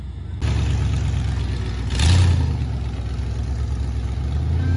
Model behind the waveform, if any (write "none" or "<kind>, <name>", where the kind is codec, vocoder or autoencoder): none